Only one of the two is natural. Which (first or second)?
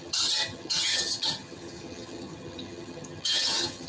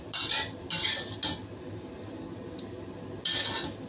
second